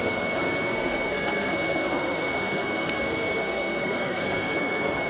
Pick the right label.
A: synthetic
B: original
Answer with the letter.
A